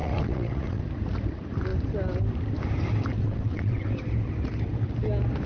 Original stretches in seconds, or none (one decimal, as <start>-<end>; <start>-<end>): 0.8-3.2; 3.9-5.5